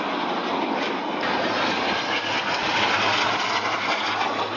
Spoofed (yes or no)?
no